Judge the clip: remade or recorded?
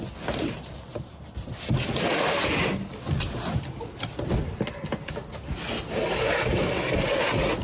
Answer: recorded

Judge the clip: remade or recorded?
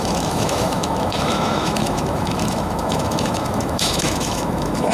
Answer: remade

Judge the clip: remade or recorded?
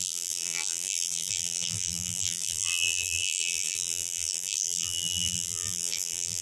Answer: remade